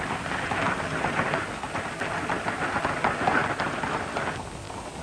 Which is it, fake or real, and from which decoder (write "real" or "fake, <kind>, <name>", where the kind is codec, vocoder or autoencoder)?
real